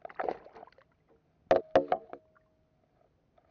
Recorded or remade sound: recorded